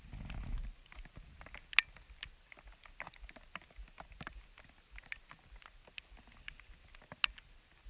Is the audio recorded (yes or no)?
yes